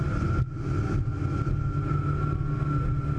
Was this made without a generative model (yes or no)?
yes